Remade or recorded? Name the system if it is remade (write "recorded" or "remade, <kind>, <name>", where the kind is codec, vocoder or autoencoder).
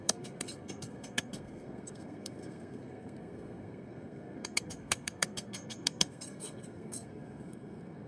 remade, codec, SNAC